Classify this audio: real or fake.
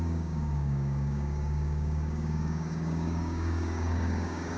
fake